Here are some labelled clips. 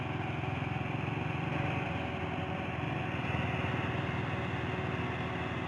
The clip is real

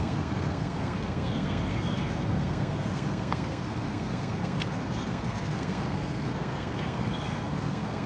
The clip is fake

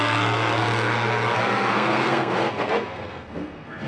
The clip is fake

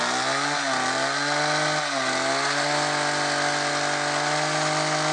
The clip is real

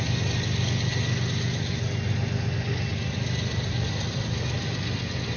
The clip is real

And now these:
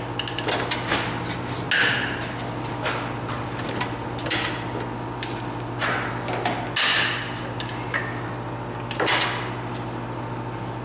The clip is real